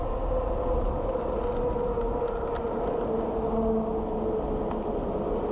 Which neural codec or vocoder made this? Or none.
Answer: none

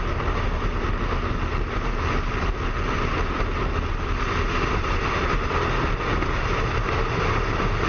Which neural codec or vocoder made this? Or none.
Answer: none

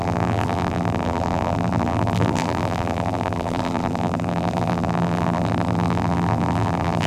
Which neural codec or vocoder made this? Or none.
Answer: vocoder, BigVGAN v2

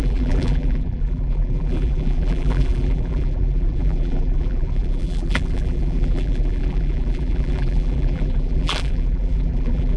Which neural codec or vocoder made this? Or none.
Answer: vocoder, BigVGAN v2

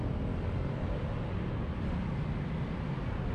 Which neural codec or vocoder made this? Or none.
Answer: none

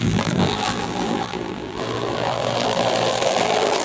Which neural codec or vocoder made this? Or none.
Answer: vocoder, BigVGAN v2